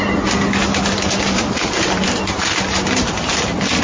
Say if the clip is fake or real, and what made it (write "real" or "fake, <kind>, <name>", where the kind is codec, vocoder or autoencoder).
real